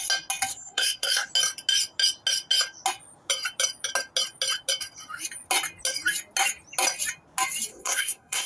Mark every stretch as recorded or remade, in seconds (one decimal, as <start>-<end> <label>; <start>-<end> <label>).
0.0-0.5 recorded; 0.5-1.3 remade; 1.3-7.7 recorded; 7.7-8.5 remade